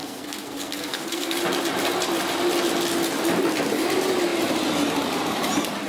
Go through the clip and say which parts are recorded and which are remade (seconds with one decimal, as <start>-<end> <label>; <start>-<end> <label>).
0.0-1.4 remade; 1.4-5.9 recorded